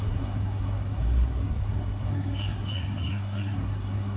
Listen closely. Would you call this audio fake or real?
fake